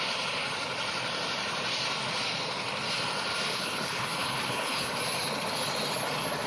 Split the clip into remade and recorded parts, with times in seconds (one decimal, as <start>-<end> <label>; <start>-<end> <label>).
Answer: 0.0-3.5 recorded; 3.5-4.9 remade; 4.9-6.5 recorded